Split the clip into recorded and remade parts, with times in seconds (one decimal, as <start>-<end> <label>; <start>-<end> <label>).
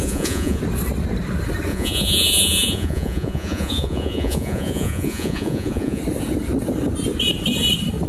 0.0-0.6 remade; 0.6-1.7 recorded; 1.7-6.0 remade; 6.0-8.1 recorded